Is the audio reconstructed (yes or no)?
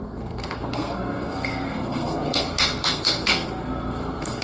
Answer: yes